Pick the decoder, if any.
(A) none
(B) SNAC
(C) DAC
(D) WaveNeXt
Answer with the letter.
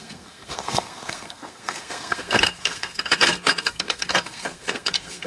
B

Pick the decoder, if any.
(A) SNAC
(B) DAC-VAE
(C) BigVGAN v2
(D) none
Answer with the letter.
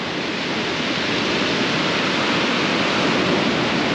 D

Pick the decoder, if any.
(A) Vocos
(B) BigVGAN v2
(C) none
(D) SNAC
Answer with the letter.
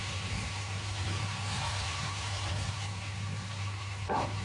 D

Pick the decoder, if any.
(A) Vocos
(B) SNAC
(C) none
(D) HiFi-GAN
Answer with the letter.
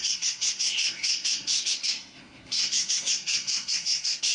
B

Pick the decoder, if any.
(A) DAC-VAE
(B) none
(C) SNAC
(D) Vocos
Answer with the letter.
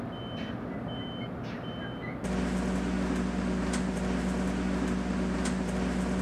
B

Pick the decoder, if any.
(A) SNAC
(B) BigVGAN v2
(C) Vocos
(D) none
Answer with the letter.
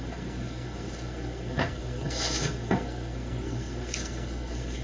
A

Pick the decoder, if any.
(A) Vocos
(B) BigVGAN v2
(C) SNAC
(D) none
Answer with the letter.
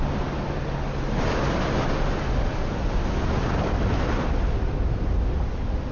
D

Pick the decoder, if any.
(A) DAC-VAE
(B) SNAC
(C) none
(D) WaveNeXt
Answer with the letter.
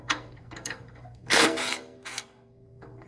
B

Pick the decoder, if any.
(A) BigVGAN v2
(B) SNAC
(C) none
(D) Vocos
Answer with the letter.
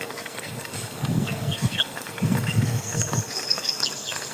B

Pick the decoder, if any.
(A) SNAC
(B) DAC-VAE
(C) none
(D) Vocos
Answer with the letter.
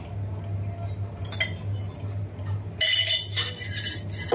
C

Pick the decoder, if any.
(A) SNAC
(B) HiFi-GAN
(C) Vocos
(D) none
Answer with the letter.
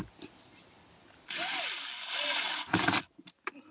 D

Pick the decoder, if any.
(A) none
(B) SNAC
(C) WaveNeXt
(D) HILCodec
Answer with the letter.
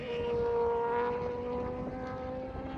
A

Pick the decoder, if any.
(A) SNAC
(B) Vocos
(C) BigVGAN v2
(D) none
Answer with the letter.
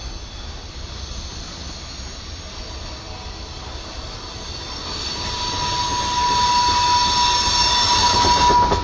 D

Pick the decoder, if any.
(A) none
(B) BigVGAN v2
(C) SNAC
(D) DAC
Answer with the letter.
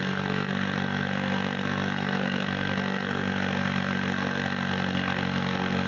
C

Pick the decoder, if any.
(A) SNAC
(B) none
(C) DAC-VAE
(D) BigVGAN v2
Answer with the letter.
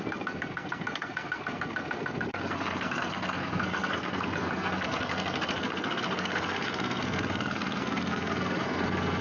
A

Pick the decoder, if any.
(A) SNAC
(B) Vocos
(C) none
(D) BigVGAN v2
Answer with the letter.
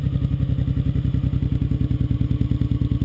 C